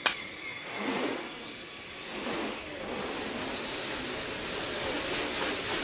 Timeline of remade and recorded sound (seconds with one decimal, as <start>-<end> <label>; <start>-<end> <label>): 0.0-0.5 recorded; 0.5-1.5 remade; 1.5-5.8 recorded